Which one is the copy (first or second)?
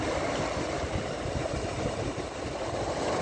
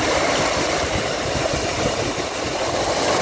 second